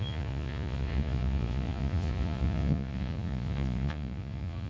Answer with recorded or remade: remade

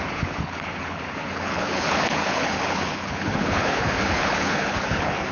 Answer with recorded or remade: remade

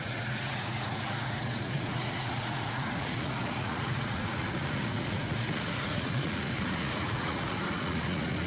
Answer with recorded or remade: remade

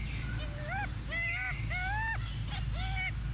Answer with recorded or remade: recorded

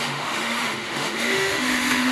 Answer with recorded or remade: remade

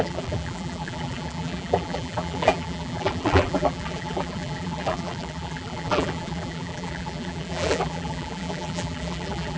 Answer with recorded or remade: remade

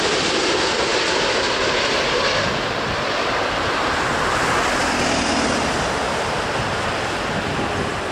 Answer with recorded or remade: remade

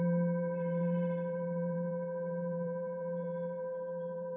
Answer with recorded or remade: remade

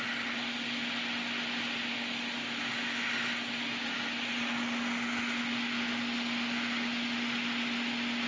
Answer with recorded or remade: recorded